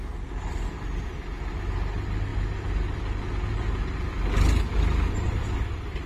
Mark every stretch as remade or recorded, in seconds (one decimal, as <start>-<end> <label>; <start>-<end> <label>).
0.0-6.1 recorded

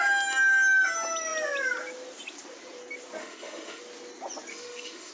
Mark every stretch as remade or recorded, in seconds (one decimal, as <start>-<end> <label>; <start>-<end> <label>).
0.0-3.2 recorded; 3.2-3.8 remade; 3.8-4.5 recorded; 4.5-5.1 remade

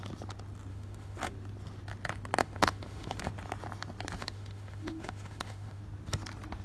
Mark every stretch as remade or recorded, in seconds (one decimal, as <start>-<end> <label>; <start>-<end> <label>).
0.0-0.7 recorded; 0.7-1.3 remade; 1.3-2.4 recorded; 2.4-3.3 remade; 3.3-4.2 recorded; 4.2-5.8 remade; 5.8-6.6 recorded

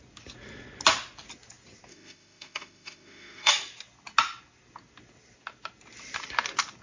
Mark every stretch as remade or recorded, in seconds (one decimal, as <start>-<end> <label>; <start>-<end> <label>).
0.0-1.9 recorded; 1.9-3.5 remade; 3.5-6.8 recorded

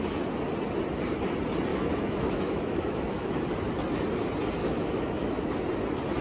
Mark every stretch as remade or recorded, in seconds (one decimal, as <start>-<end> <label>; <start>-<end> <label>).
0.0-1.7 recorded; 1.7-3.4 remade; 3.4-4.6 recorded; 4.6-5.5 remade; 5.5-6.2 recorded